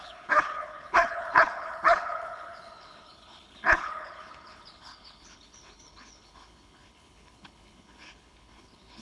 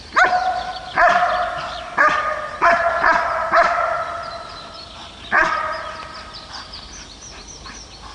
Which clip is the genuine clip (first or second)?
second